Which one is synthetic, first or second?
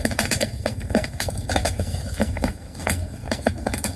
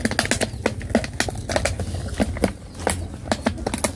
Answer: first